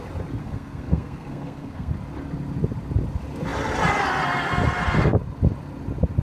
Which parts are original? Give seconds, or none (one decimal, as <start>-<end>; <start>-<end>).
0.0-0.4; 1.9-6.2